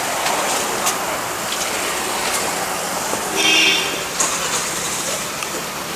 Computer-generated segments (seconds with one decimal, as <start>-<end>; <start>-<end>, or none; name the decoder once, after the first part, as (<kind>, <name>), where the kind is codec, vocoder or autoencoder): 4.6-5.5 (vocoder, BigVGAN v2)